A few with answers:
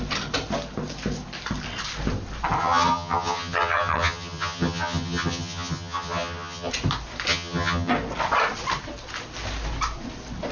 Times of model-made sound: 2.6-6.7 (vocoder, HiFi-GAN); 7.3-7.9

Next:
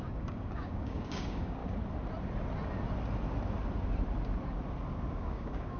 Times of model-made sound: 0.0-1.6 (codec, DAC); 5.1-5.8

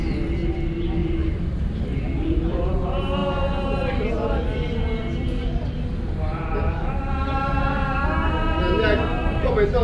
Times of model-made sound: none

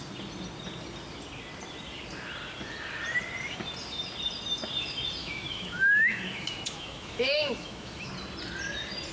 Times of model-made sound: 5.2-8.1 (autoencoder, DAC-VAE)

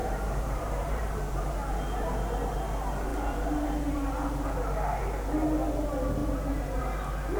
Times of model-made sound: 0.0-1.5 (vocoder, BigVGAN v2); 3.1-4.0; 6.2-6.8